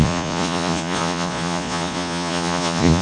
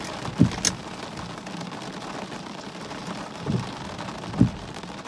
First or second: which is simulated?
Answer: first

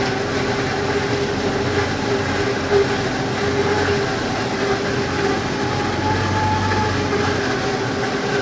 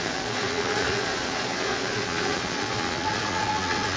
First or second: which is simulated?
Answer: second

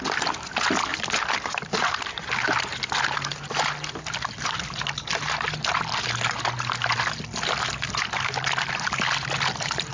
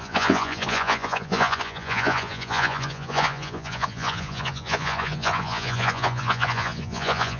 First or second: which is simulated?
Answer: second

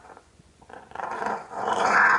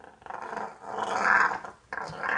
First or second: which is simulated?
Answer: first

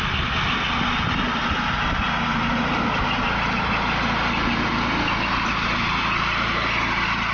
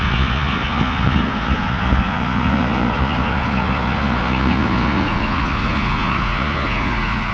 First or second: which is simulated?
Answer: second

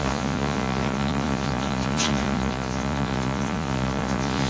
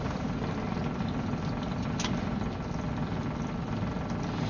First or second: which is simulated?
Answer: first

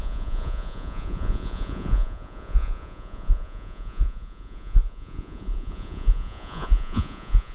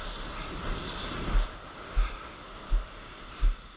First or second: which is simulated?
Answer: first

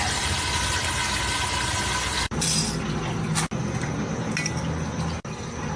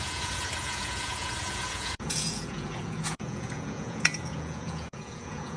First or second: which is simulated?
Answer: second